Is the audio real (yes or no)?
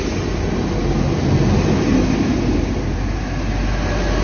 yes